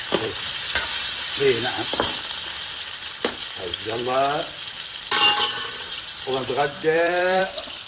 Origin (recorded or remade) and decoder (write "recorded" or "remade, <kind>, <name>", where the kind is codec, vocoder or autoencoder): remade, vocoder, BigVGAN v2